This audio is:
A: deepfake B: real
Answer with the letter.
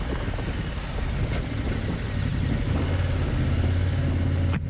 B